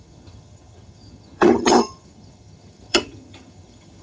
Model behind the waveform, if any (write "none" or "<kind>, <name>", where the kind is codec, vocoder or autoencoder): vocoder, HiFi-GAN